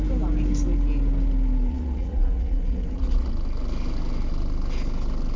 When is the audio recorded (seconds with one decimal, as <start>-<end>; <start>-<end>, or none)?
0.0-1.7; 3.3-5.4